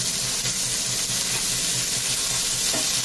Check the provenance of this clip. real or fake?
real